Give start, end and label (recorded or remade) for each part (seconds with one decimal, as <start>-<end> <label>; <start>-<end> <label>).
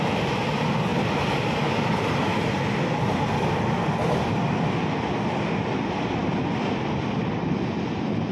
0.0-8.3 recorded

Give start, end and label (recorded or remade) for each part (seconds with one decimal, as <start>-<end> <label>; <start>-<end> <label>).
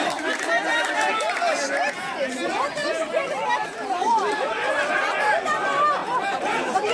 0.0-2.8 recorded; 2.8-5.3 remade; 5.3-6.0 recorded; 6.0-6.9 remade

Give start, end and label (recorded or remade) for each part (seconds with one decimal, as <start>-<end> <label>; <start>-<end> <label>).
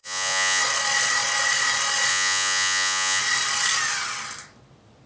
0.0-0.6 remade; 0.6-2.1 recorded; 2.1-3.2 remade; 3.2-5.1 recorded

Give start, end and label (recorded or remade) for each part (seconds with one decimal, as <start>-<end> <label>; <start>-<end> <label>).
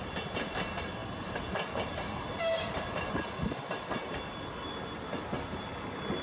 0.0-6.2 recorded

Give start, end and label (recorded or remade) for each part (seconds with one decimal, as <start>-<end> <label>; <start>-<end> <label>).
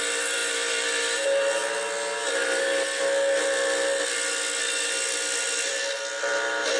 0.0-6.8 recorded